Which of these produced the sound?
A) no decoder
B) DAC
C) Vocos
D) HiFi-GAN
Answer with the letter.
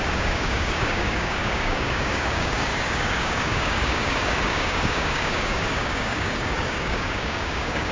B